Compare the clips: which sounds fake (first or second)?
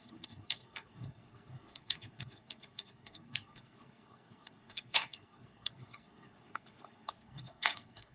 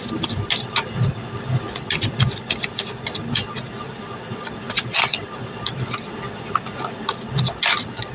first